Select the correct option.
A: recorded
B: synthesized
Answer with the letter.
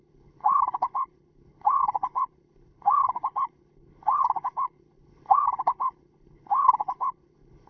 B